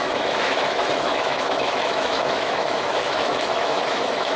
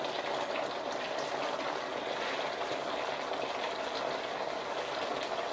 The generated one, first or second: first